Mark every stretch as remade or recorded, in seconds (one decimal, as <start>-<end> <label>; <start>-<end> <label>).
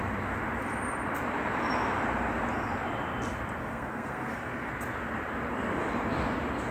0.0-3.6 recorded; 3.6-4.7 remade; 4.7-6.7 recorded